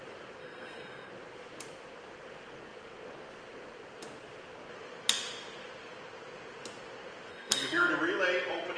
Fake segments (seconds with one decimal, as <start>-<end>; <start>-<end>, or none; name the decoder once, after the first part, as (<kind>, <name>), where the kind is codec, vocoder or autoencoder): 0.4-1.1 (codec, SNAC); 7.3-7.9